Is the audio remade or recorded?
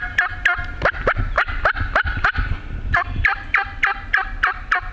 recorded